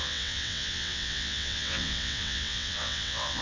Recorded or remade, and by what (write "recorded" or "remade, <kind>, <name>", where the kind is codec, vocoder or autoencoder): remade, vocoder, WaveNeXt